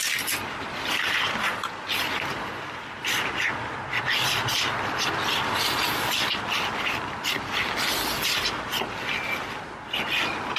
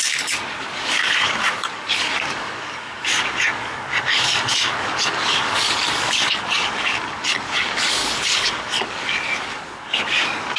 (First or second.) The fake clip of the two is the second